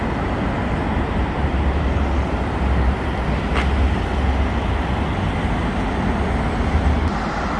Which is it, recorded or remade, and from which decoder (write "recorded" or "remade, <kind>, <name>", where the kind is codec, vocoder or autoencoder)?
recorded